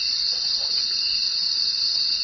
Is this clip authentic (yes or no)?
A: yes